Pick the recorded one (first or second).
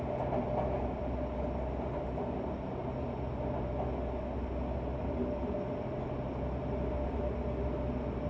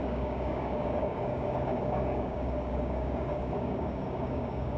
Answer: first